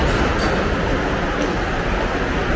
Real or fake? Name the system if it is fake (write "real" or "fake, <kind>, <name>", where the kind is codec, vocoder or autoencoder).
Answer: real